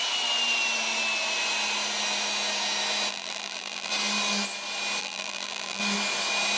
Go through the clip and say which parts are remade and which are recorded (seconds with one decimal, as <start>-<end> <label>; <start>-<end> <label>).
0.0-3.1 recorded; 3.1-3.9 remade; 3.9-5.0 recorded; 5.0-5.8 remade; 5.8-6.6 recorded